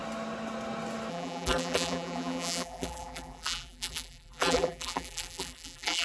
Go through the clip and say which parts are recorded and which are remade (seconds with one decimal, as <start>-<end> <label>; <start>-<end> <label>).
0.0-1.1 recorded; 1.1-6.0 remade